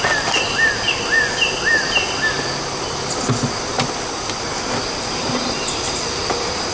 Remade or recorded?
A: recorded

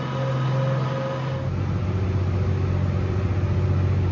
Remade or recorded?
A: recorded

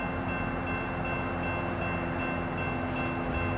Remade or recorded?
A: recorded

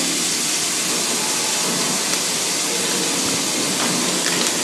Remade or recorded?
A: recorded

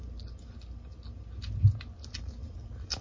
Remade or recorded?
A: recorded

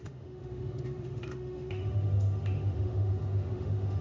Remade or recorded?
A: remade